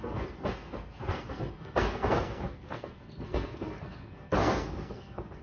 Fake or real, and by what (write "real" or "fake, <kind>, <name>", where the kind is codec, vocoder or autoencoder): fake, codec, SNAC